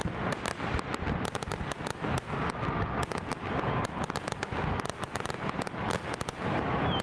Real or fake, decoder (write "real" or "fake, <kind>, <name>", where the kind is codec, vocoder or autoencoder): real